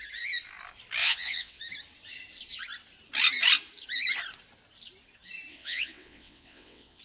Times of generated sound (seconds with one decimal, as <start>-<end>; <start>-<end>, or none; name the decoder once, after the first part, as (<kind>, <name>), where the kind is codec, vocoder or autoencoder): 1.0-1.6 (vocoder, WaveNeXt); 5.5-7.0